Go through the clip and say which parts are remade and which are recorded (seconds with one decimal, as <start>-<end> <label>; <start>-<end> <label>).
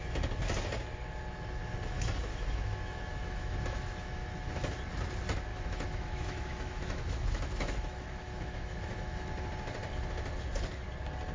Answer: 0.0-2.3 recorded; 2.3-4.5 remade; 4.5-5.5 recorded; 5.5-9.3 remade; 9.3-11.3 recorded